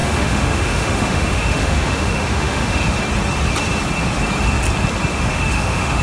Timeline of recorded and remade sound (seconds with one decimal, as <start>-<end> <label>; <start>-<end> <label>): 0.0-3.0 remade; 3.0-5.1 recorded; 5.1-6.0 remade